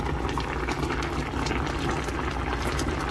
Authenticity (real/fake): real